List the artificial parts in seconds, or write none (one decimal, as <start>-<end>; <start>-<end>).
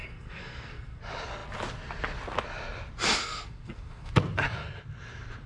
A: 0.0-1.0; 3.2-4.1